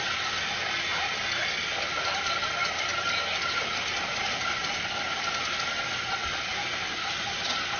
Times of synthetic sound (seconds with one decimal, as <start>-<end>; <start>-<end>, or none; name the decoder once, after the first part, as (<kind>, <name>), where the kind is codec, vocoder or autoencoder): none